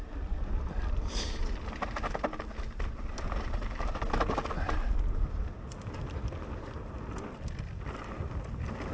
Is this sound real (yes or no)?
yes